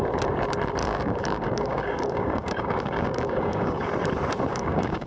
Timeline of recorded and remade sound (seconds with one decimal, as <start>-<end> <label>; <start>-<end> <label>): 0.0-0.8 recorded; 0.8-3.9 remade; 3.9-4.5 recorded; 4.5-5.1 remade